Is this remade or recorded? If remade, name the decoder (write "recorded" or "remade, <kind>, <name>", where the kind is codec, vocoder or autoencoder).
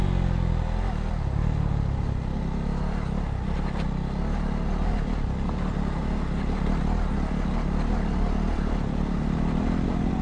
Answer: recorded